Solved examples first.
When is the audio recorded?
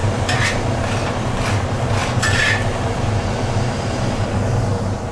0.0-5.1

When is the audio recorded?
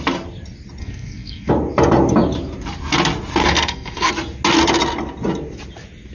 0.0-0.8; 1.5-3.4; 4.1-6.1